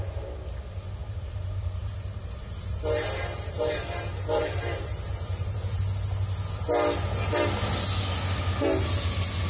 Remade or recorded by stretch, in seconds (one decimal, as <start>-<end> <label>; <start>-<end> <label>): 0.0-1.0 recorded; 1.0-5.8 remade; 5.8-9.5 recorded